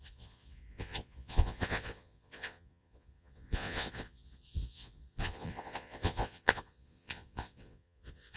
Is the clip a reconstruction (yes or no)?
yes